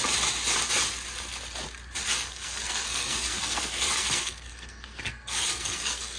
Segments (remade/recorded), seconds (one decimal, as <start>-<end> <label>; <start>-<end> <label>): 0.0-2.2 recorded; 2.2-6.2 remade